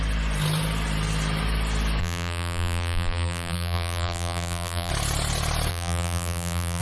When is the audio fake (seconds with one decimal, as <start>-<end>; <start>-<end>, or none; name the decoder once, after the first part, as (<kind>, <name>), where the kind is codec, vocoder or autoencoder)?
2.0-4.9 (vocoder, BigVGAN v2); 5.7-6.8